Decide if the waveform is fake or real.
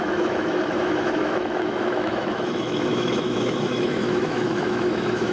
fake